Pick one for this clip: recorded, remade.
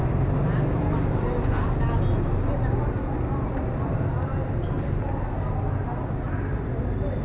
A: recorded